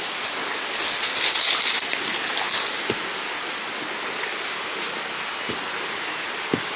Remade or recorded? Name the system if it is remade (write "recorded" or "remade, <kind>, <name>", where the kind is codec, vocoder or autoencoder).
recorded